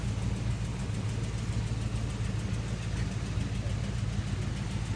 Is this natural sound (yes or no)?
yes